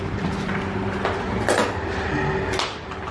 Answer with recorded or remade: recorded